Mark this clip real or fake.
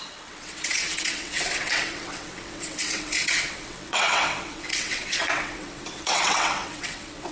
fake